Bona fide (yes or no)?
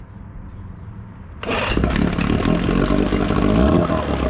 yes